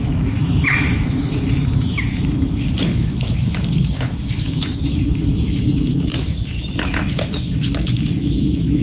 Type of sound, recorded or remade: remade